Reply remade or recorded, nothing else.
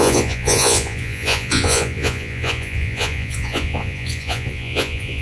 remade